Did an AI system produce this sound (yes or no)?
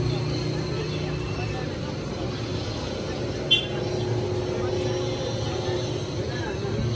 no